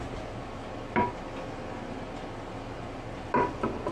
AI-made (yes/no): no